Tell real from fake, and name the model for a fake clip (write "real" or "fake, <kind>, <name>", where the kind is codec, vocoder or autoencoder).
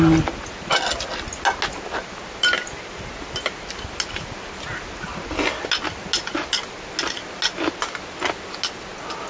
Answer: real